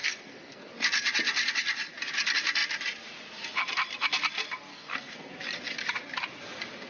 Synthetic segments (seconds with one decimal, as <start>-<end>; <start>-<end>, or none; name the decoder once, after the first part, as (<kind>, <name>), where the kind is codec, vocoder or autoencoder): 0.0-0.7 (codec, SNAC); 4.7-5.3

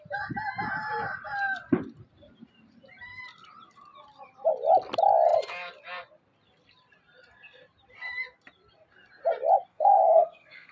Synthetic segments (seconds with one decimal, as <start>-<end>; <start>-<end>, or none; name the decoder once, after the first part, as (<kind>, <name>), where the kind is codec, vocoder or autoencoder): 9.7-10.7 (codec, SNAC)

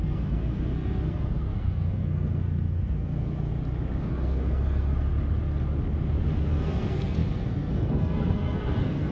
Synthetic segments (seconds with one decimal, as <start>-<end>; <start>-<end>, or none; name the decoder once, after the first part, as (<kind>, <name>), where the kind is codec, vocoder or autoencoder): 0.0-3.5 (codec, SNAC); 4.0-5.1; 6.4-9.1

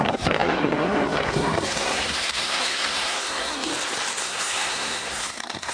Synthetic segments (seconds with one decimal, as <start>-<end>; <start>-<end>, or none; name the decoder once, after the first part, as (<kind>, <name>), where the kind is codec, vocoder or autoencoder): 0.0-3.7 (codec, SNAC); 4.2-5.7

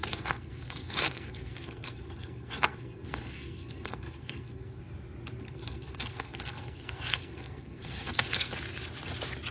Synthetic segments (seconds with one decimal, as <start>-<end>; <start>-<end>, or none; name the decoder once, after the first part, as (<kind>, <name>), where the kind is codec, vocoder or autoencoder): 0.0-4.8 (codec, SNAC); 5.4-8.5

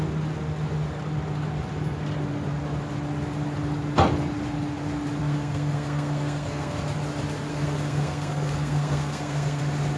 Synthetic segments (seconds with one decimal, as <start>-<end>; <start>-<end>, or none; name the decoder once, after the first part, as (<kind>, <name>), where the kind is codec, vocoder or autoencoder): 5.2-6.8 (codec, SNAC); 7.5-9.6

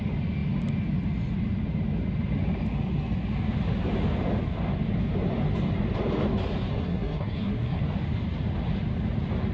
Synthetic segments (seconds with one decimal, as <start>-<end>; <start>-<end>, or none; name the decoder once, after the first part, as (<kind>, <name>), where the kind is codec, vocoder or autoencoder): 6.7-7.8 (codec, SNAC)

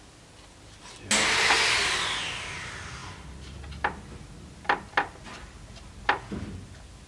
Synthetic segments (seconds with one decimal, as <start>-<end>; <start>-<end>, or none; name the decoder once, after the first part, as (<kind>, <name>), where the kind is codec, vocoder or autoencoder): none